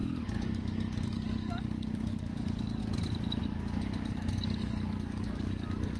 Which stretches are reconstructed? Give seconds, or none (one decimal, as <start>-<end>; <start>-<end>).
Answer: 0.0-2.8; 3.4-6.0